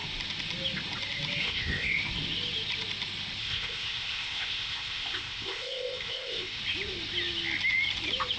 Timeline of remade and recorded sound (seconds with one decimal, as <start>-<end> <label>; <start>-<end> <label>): 0.0-1.4 recorded; 1.4-1.9 remade; 1.9-3.4 recorded; 3.4-6.6 remade; 6.6-8.4 recorded